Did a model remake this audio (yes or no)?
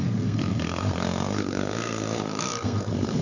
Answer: yes